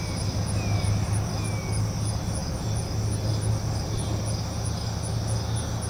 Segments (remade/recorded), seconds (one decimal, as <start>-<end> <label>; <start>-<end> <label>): 0.0-5.9 recorded